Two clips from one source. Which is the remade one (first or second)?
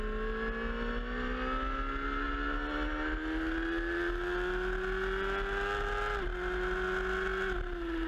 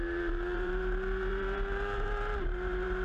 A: second